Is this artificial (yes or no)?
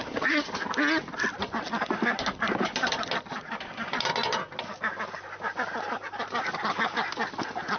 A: no